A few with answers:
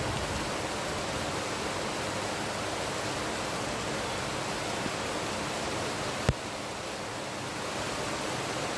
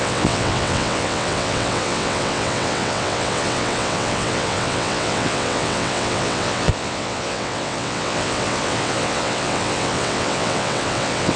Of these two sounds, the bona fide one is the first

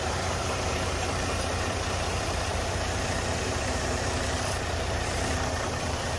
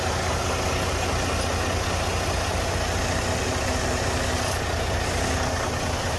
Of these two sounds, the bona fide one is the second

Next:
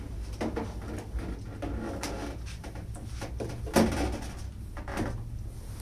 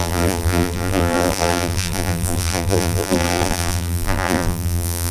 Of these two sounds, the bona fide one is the first